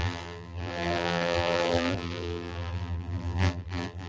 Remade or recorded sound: remade